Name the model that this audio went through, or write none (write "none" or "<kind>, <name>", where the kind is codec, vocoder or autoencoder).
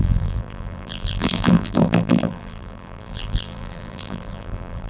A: vocoder, BigVGAN v2